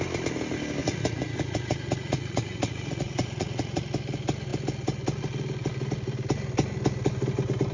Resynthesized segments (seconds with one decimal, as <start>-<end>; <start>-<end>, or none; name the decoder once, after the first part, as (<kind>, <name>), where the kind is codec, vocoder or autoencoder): 0.8-3.8 (vocoder, Vocos)